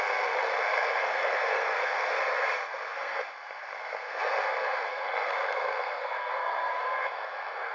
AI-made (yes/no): yes